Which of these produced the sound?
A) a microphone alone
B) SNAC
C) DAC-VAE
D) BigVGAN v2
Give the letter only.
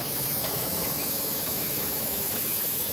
C